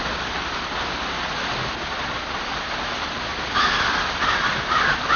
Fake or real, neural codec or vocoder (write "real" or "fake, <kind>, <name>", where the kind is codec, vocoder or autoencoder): real